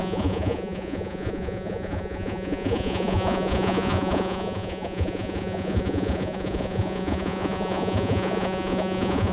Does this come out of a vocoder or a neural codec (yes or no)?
yes